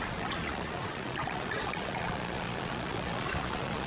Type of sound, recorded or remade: remade